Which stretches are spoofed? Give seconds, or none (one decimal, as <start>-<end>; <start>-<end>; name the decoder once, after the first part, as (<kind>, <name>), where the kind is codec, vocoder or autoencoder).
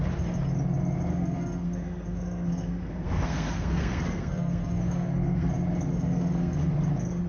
1.1-5.5 (codec, SNAC); 5.9-6.7